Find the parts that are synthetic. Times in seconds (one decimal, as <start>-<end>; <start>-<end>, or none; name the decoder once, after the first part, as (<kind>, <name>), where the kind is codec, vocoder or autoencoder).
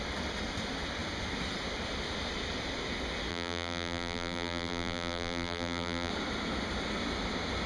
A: 3.3-6.1 (vocoder, BigVGAN v2)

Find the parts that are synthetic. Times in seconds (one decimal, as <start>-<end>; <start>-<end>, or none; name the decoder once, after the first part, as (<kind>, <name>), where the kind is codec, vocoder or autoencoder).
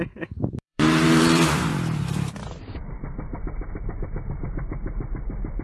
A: 0.0-1.7 (vocoder, BigVGAN v2); 2.3-5.6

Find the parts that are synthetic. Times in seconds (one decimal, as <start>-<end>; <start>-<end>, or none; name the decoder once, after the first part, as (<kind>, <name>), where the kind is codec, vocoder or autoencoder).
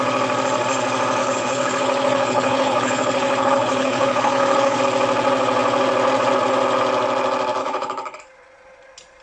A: 1.2-4.8 (codec, HILCodec); 7.6-8.2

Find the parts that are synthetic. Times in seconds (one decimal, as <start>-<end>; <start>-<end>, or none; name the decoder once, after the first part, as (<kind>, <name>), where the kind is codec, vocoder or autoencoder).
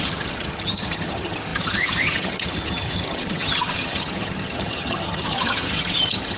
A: 0.0-6.4 (vocoder, HiFi-GAN)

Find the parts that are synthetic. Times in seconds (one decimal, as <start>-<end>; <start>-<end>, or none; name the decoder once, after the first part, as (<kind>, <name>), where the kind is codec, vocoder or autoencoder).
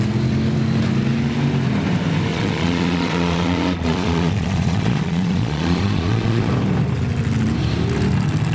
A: 2.3-6.5 (vocoder, Vocos)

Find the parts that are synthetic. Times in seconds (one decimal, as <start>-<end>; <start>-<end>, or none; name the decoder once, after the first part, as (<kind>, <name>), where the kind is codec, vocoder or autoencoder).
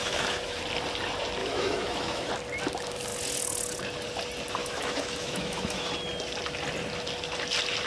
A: 0.0-0.6 (autoencoder, DAC-VAE); 1.4-2.3; 4.6-5.9